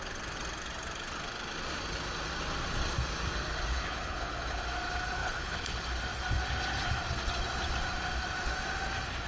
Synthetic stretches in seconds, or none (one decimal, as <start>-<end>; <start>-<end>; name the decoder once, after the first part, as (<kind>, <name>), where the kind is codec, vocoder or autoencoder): 3.7-4.6 (codec, HILCodec); 5.2-5.8